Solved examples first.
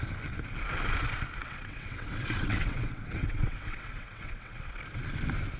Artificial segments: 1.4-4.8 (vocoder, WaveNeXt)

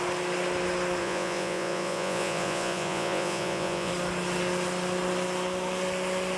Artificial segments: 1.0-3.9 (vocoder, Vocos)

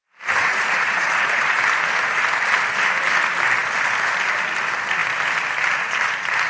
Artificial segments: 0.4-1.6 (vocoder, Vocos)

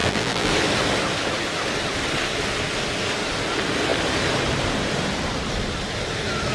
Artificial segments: 0.0-0.5 (vocoder, BigVGAN v2)

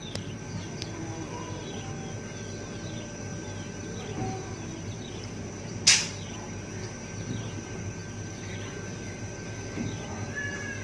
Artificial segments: none